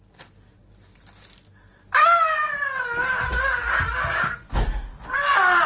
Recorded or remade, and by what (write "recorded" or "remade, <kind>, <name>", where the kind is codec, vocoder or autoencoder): recorded